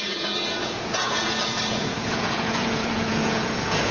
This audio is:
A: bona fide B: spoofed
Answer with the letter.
B